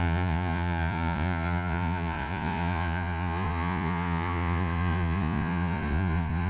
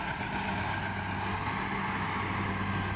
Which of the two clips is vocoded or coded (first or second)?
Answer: first